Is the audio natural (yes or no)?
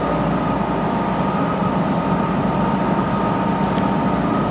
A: yes